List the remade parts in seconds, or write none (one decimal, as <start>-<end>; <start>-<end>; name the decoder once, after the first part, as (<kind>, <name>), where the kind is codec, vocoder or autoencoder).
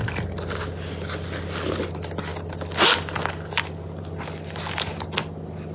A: none